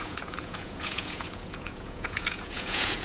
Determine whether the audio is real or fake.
fake